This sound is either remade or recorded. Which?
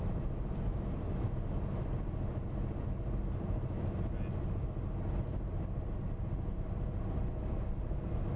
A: recorded